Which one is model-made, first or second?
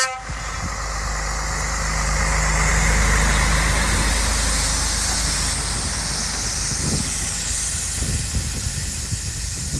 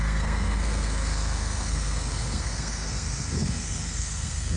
second